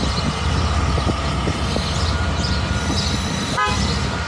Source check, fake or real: real